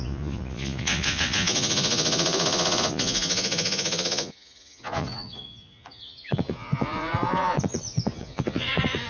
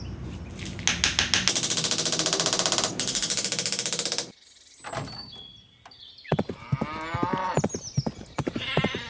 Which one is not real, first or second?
first